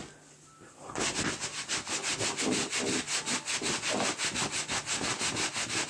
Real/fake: real